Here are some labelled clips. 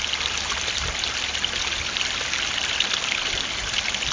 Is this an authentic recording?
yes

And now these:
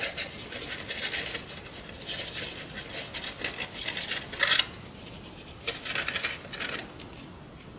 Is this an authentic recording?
yes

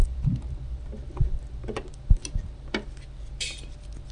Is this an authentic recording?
yes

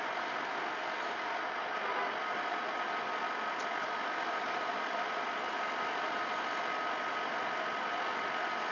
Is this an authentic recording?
yes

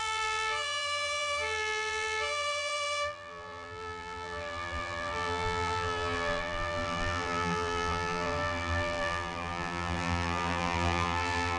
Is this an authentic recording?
no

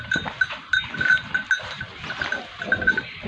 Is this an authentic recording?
yes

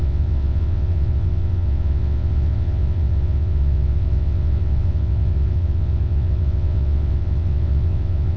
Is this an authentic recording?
no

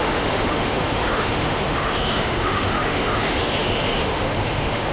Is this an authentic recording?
no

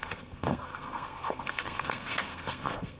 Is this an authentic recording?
no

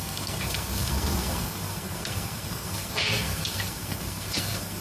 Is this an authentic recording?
no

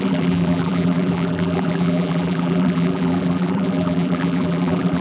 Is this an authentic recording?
no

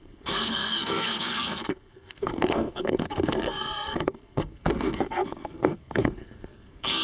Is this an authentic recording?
no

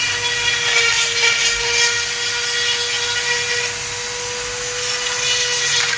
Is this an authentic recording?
yes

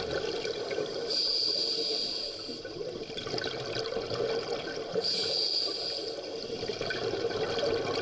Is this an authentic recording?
yes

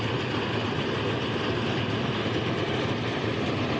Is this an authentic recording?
yes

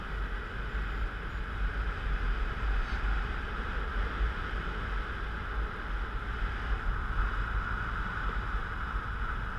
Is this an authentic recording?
yes